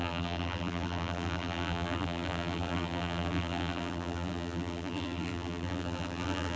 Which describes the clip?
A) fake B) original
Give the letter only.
A